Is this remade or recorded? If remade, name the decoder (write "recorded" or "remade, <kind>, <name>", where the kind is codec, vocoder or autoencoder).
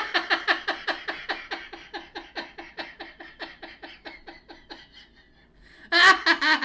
recorded